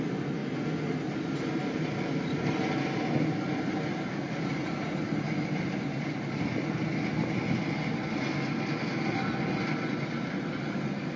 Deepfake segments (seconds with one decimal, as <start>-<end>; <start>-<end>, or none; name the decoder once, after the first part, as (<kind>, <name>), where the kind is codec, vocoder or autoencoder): none